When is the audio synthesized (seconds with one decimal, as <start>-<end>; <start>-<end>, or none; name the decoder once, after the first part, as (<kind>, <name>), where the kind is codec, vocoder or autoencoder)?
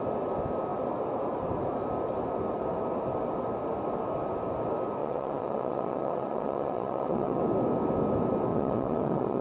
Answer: 5.0-7.4 (vocoder, WaveNeXt); 8.5-9.4